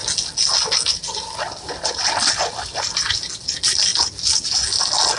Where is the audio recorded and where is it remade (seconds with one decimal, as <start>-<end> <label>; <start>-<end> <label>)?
0.0-5.2 recorded